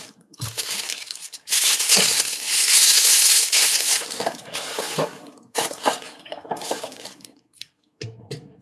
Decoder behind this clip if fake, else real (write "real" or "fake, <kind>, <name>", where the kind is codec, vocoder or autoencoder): fake, codec, SNAC